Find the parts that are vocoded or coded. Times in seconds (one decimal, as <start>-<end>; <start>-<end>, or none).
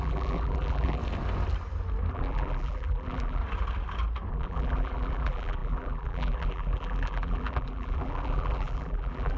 0.0-1.0; 2.1-3.4; 4.3-9.4